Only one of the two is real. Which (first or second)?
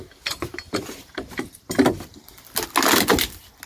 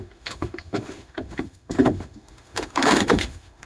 first